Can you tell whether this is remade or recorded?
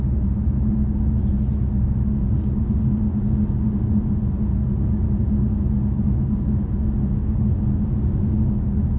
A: recorded